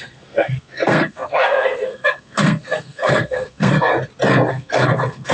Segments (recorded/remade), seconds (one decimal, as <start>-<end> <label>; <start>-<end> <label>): 0.0-3.9 remade; 3.9-4.5 recorded; 4.5-5.3 remade